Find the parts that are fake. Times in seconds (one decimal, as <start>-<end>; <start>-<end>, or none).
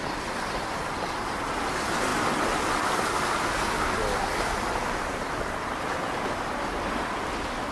none